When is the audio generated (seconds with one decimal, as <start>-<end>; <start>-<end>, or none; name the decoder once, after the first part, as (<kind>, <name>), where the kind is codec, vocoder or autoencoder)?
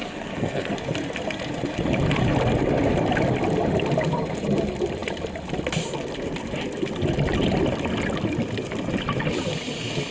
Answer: 0.0-0.7 (codec, SNAC)